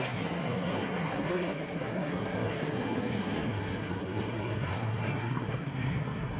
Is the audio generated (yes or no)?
yes